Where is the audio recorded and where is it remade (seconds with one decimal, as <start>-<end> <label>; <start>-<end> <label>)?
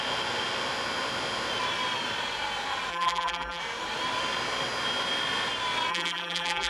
0.0-2.9 recorded; 2.9-3.6 remade; 3.6-5.9 recorded; 5.9-6.7 remade